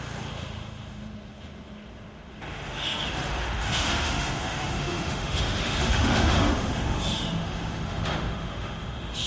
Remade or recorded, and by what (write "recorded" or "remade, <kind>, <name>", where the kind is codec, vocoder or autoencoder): remade, autoencoder, DAC-VAE